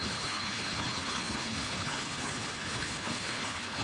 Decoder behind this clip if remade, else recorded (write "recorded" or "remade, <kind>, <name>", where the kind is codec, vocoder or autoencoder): remade, codec, HILCodec